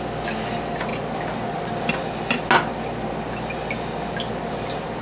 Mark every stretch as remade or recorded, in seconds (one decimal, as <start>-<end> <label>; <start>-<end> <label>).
0.0-5.0 recorded